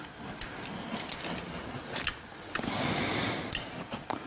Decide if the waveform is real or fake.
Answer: real